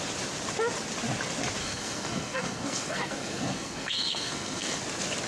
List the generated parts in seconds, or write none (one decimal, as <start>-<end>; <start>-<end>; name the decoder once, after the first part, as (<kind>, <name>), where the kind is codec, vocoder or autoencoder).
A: 1.6-4.8 (codec, SNAC)